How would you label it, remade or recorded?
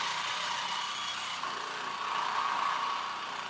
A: recorded